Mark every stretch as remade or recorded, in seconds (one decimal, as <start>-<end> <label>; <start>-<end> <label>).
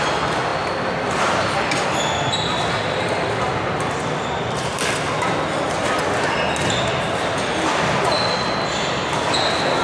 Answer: 0.0-9.8 recorded